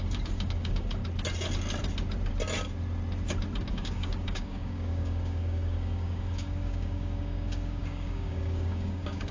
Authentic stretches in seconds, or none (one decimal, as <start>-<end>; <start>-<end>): 1.0-3.7